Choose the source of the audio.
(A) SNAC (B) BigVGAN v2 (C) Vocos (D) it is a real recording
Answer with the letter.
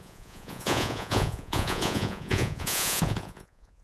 C